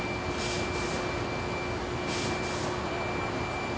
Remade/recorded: recorded